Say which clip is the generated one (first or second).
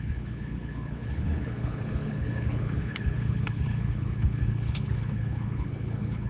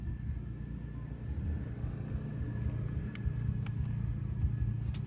first